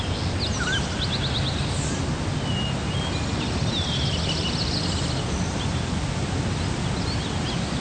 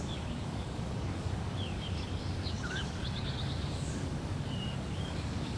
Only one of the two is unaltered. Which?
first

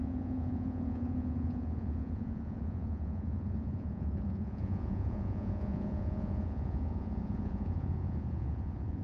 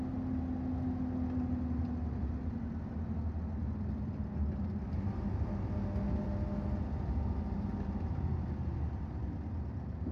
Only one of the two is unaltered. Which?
second